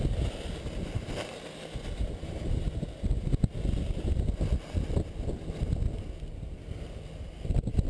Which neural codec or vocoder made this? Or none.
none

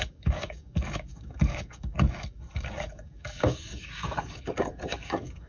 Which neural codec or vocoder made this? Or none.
codec, DAC